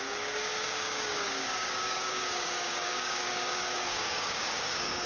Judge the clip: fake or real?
fake